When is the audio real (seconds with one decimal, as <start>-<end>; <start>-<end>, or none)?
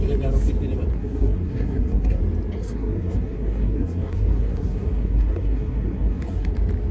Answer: 0.0-0.9; 2.2-2.6; 6.5-6.9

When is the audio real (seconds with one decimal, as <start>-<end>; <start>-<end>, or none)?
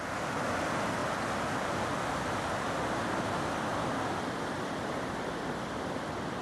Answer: 0.0-6.4